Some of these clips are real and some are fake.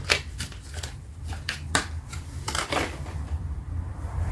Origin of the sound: fake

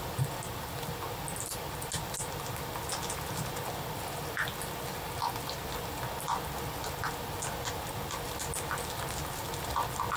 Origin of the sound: real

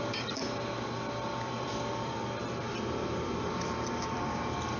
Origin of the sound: fake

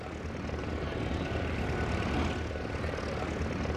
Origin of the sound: real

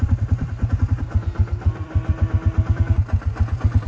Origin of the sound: fake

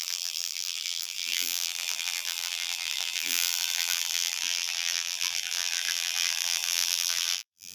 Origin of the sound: fake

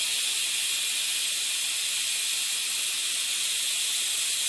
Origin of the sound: real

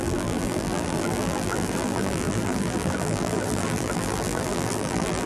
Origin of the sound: fake